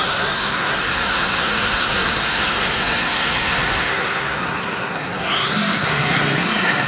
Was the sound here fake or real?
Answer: fake